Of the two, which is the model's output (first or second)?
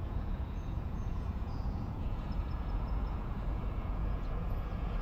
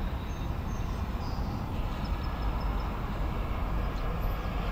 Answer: first